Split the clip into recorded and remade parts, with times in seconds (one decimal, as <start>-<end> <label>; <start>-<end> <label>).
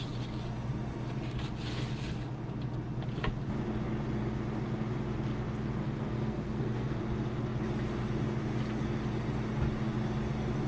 0.0-5.8 recorded; 5.8-7.0 remade; 7.0-10.7 recorded